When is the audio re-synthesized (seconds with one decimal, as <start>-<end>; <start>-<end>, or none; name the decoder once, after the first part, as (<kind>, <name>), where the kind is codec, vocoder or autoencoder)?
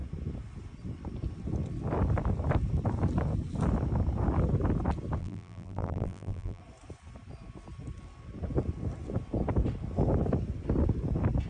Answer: 5.2-6.6 (vocoder, BigVGAN v2)